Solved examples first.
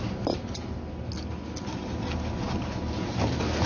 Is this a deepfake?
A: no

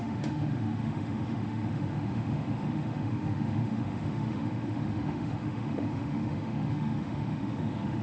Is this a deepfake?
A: yes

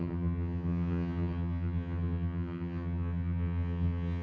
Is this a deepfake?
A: yes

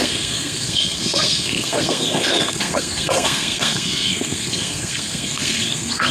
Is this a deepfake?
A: yes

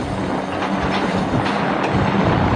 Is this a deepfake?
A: no